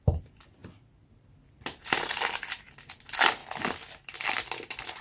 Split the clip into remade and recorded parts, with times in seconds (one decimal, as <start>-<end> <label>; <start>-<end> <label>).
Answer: 0.0-5.0 recorded